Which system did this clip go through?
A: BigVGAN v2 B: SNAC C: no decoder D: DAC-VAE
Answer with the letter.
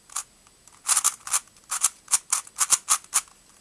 C